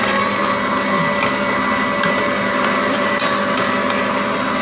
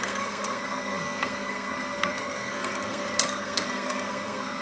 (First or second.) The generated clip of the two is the second